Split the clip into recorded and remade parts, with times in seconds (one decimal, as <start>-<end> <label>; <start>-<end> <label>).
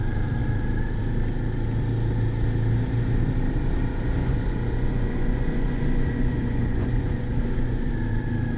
0.0-4.2 recorded; 4.2-7.9 remade; 7.9-8.6 recorded